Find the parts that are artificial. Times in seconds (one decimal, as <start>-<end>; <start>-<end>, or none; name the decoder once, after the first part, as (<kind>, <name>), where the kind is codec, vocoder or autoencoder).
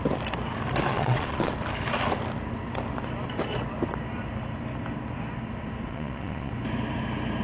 0.9-1.5 (vocoder, Vocos); 5.9-6.5